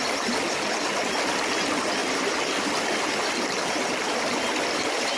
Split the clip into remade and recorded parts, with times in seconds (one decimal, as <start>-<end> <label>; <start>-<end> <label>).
0.0-5.2 recorded